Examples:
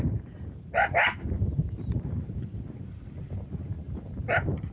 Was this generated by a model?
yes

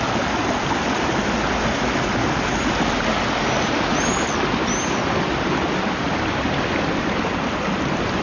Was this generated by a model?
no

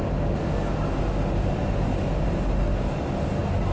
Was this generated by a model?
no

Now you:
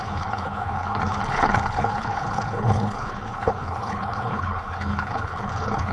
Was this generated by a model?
yes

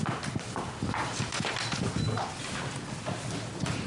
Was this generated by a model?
no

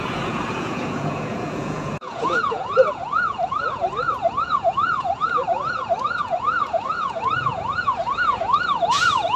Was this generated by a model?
yes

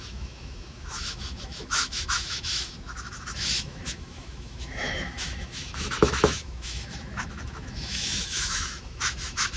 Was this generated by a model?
yes